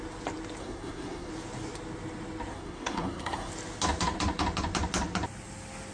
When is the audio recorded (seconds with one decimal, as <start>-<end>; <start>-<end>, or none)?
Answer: 0.0-0.6; 1.3-2.5; 3.5-5.9